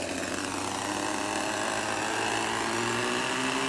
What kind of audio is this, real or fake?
real